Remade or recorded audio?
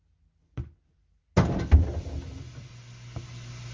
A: recorded